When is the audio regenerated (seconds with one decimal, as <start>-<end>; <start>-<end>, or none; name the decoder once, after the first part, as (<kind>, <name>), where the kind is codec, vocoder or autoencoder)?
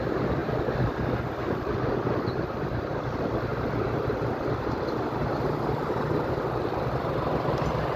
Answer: none